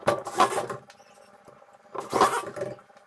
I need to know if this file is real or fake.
real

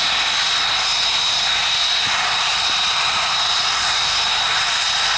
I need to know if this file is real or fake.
real